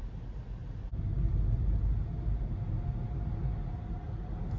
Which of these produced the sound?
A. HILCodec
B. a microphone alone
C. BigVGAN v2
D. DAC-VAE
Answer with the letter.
B